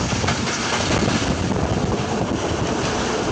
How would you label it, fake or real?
real